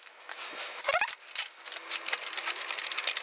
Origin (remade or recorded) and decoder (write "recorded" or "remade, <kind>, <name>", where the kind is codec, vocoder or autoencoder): recorded